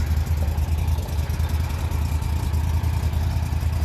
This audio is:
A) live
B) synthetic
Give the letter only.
A